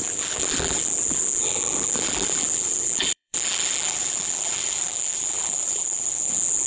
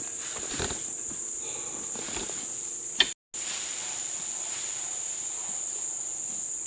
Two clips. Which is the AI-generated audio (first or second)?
first